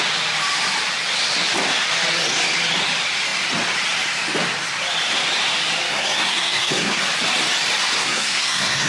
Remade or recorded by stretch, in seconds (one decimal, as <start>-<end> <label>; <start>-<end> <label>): 0.0-5.9 recorded; 5.9-7.0 remade; 7.0-8.0 recorded; 8.0-8.9 remade